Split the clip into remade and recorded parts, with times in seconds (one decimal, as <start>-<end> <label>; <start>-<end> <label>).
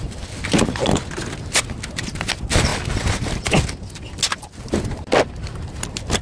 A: 0.0-6.2 recorded